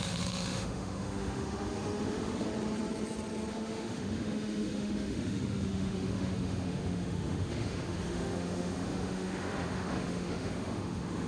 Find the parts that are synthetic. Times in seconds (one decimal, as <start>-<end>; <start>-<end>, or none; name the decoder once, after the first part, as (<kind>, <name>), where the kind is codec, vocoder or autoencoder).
0.0-2.5 (autoencoder, DAC-VAE); 3.5-11.3